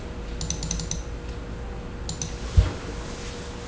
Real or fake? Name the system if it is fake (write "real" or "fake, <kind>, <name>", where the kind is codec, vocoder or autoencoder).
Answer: real